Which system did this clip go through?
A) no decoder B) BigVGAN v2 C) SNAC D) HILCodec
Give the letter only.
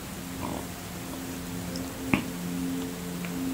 A